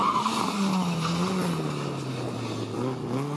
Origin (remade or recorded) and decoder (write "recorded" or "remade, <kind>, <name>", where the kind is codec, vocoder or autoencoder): recorded